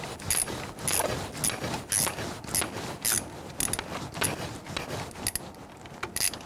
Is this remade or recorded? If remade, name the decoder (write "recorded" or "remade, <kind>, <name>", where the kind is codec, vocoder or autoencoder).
recorded